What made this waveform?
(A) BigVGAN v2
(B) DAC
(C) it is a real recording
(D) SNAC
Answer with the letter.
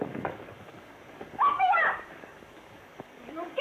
B